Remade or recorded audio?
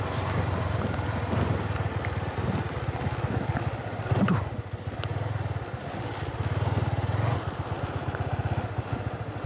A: recorded